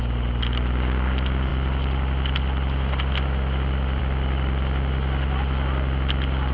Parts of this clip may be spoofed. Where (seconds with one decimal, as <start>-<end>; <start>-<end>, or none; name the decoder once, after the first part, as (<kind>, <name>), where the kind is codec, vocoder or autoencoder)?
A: none